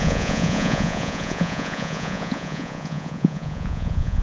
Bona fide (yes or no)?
no